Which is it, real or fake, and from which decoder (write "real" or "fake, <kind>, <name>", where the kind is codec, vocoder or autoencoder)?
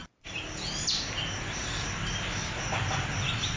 real